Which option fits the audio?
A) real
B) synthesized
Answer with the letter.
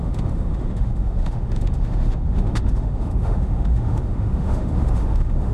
B